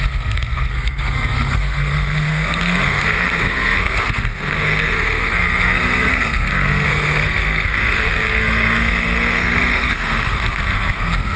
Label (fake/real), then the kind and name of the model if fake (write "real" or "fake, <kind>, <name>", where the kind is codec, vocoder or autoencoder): fake, codec, SNAC